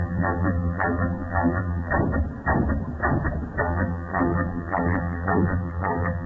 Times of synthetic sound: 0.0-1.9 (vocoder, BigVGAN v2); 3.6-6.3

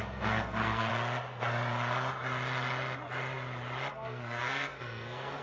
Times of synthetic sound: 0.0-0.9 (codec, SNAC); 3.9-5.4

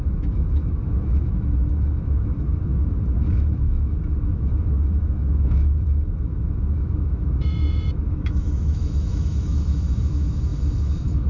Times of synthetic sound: 0.0-11.3 (autoencoder, DAC-VAE)

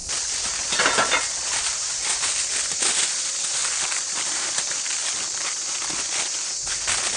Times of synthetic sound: 0.0-2.1 (vocoder, BigVGAN v2); 3.6-4.5; 5.0-5.6

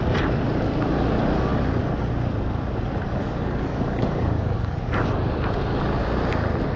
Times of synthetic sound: 3.2-4.9 (codec, DAC)

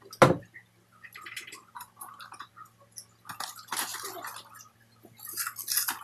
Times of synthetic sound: 1.6-2.5 (vocoder, BigVGAN v2); 3.9-5.3